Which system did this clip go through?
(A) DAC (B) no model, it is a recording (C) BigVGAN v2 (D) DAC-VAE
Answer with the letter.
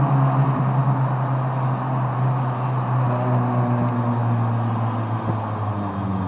B